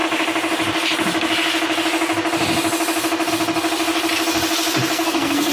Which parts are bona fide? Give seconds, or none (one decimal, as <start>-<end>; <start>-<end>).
0.0-4.9